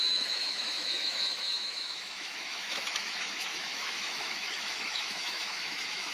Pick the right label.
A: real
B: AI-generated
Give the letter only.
B